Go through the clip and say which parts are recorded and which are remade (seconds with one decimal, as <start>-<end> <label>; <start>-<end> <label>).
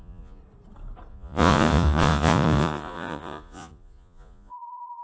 0.0-0.4 remade; 0.4-1.1 recorded; 1.1-5.0 remade